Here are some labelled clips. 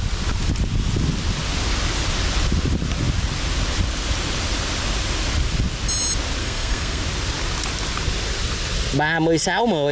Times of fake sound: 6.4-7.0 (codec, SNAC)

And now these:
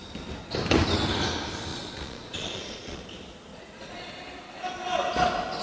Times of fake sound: 1.7-3.0 (vocoder, Vocos); 3.5-4.1

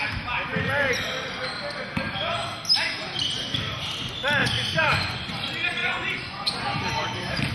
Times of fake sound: 4.4-5.3 (vocoder, Vocos); 5.8-7.5

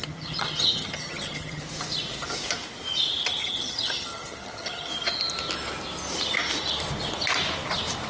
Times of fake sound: 0.0-1.6 (vocoder, HiFi-GAN); 3.4-4.9

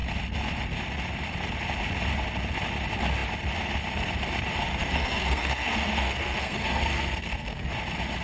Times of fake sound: 4.7-7.7 (codec, SNAC)

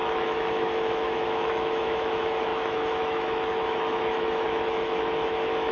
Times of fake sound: 0.0-5.7 (autoencoder, DAC-VAE)

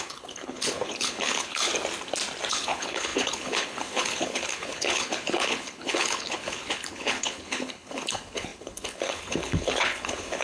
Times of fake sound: 0.0-1.7 (codec, HILCodec); 2.5-10.4

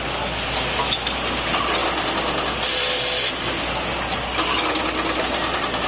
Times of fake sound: none